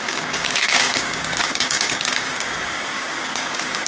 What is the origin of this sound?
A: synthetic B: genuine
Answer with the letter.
A